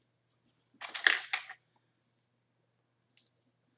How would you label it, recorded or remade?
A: recorded